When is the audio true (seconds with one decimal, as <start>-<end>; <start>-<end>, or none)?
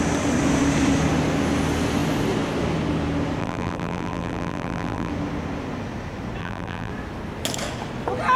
0.0-3.4; 5.1-6.4; 6.9-8.4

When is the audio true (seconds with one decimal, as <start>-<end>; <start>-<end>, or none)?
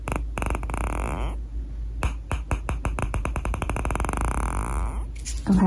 0.0-3.0; 3.8-5.7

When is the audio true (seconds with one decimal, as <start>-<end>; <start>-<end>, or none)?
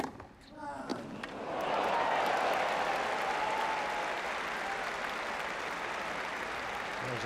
0.0-7.3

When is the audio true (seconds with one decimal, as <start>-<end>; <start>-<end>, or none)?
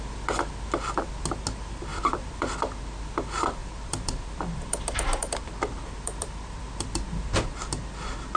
0.0-1.9; 2.5-3.6; 7.6-8.4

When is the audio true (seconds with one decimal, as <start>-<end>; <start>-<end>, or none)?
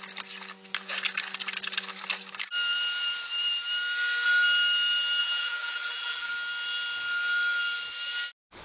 0.0-5.2; 6.3-8.6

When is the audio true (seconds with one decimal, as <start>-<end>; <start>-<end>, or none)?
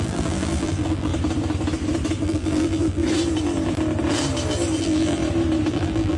1.1-2.2; 3.0-4.8; 5.2-5.7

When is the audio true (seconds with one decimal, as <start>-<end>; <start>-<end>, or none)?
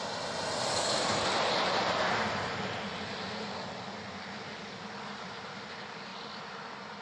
0.0-2.9; 3.5-6.1